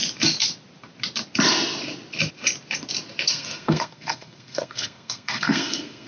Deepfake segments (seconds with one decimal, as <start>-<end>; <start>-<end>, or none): 3.3-6.1